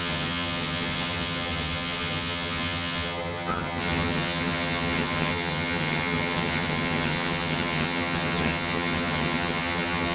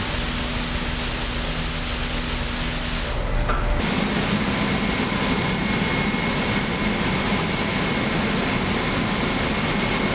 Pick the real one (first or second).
second